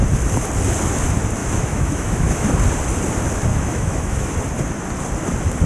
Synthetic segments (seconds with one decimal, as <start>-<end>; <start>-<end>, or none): 1.4-2.5; 3.5-4.3